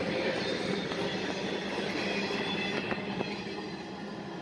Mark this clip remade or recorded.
recorded